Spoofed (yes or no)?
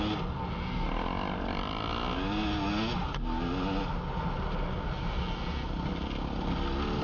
no